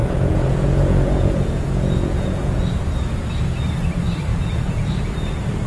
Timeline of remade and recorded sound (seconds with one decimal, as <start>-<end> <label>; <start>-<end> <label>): 0.0-3.4 remade; 3.4-4.3 recorded; 4.3-5.0 remade; 5.0-5.7 recorded